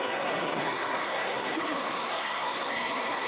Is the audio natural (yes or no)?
no